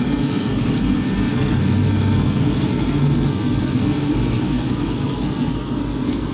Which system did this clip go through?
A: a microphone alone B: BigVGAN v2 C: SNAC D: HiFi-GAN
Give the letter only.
C